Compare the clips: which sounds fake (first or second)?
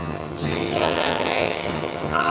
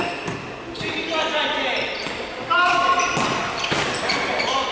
first